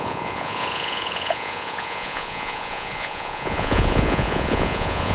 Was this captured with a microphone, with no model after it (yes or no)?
no